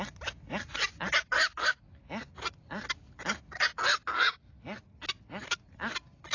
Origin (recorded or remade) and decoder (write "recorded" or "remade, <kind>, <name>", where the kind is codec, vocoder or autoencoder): recorded